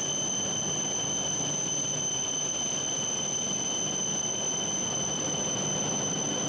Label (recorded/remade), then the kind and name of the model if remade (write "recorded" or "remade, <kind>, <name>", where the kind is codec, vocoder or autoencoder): recorded